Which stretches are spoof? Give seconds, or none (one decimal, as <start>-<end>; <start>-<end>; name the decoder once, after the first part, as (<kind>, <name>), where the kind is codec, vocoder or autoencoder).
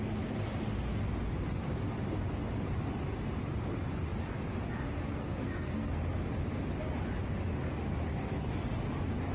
5.2-6.0 (codec, SNAC)